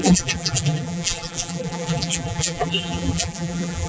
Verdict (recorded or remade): remade